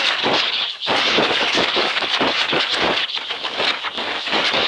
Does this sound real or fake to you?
fake